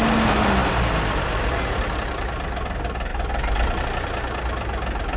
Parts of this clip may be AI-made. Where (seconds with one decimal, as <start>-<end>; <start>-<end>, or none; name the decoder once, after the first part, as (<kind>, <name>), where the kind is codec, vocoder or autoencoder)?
none